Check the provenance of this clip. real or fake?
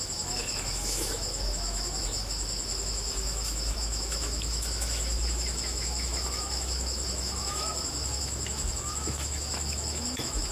fake